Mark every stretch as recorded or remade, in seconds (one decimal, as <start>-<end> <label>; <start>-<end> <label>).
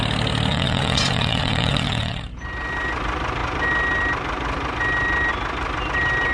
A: 0.0-0.5 recorded; 0.5-2.2 remade; 2.2-6.3 recorded